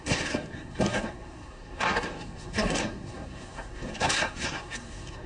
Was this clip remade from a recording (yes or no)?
yes